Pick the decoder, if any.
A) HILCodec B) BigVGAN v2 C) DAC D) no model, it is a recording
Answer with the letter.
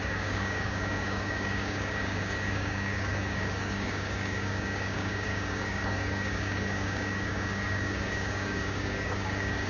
C